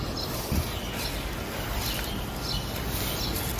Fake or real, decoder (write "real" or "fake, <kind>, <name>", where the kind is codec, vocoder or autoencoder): real